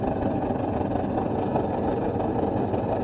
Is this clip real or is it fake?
real